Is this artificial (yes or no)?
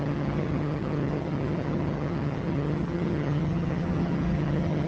yes